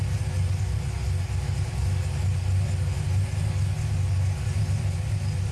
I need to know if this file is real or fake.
real